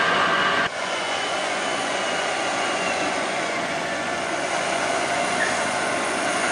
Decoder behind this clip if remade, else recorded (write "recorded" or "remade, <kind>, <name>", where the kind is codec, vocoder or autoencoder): remade, vocoder, Vocos